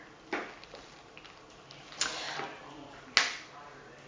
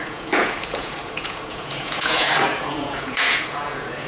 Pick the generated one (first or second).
second